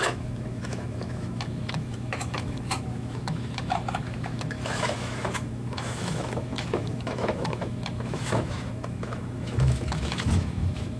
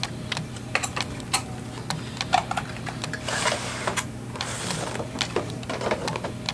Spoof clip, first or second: first